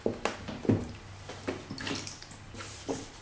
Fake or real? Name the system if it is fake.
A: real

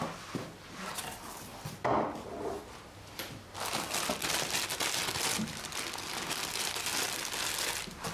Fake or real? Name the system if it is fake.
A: real